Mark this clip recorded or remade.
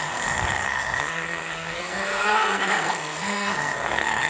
remade